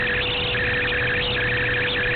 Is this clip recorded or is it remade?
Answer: recorded